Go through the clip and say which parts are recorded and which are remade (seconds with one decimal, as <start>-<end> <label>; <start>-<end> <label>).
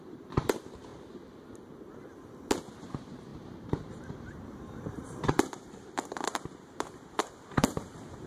0.0-0.9 remade; 0.9-2.7 recorded; 2.7-8.3 remade